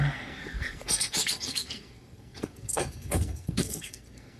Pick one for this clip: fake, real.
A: fake